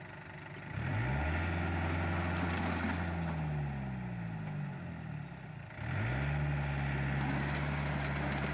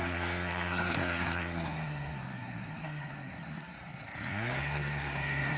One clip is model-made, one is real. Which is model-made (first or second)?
second